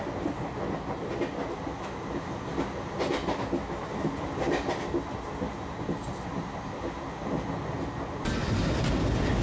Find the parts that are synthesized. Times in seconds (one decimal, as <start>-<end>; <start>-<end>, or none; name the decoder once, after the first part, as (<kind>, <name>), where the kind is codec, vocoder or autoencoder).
none